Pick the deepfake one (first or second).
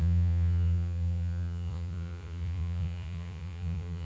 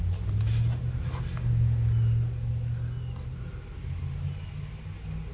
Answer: first